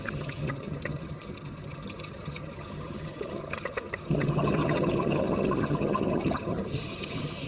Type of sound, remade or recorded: remade